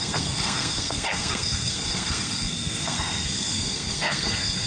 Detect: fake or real fake